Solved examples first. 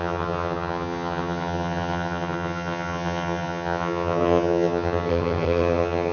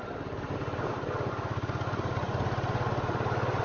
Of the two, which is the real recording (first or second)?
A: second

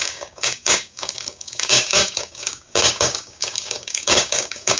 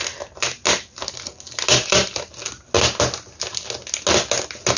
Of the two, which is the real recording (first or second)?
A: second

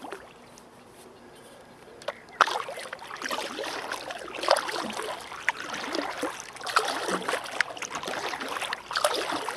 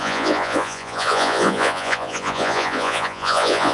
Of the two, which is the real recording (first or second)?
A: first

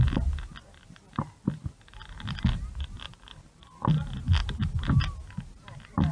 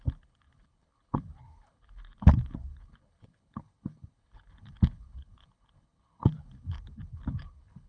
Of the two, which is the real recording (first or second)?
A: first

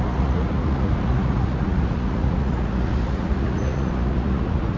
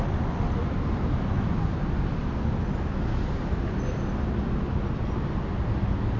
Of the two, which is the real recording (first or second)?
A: second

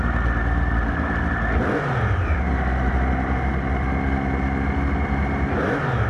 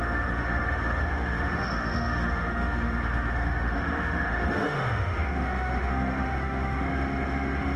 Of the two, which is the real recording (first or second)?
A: first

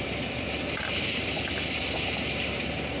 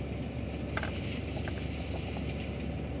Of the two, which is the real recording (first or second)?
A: second